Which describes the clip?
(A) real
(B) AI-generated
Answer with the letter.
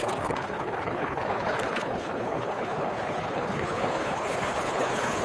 B